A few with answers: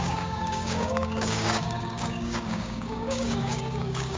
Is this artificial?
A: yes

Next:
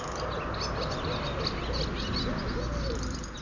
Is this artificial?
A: no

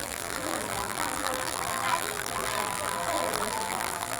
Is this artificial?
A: yes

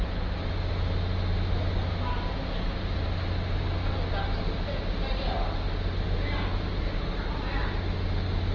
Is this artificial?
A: no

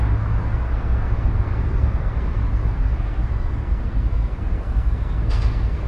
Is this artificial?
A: yes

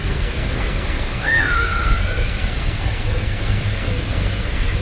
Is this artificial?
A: yes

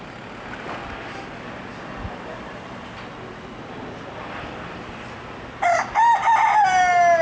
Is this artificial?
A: no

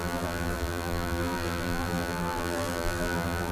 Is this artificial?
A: yes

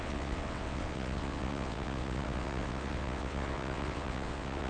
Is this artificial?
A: yes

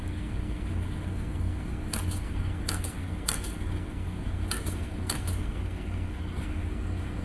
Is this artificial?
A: yes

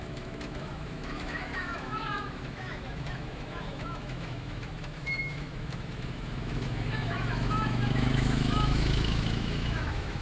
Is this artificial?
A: yes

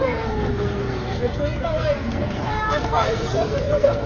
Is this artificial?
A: yes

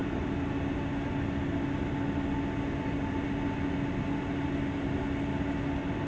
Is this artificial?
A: no